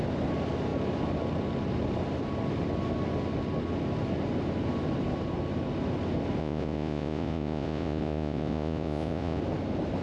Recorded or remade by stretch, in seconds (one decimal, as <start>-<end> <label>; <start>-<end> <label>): 0.0-6.4 recorded; 6.4-9.4 remade; 9.4-10.0 recorded